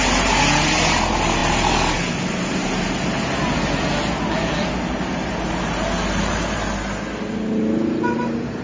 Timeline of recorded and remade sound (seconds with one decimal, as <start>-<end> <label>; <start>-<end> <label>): 0.0-8.6 recorded